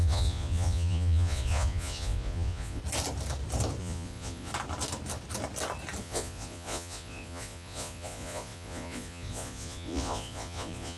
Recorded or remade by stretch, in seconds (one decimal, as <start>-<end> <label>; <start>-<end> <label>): 0.0-2.8 remade; 2.8-3.8 recorded; 3.8-4.5 remade; 4.5-6.0 recorded; 6.0-11.0 remade